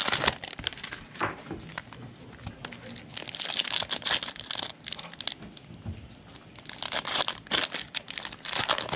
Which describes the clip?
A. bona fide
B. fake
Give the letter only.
A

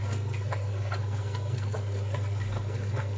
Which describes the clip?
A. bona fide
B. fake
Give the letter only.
B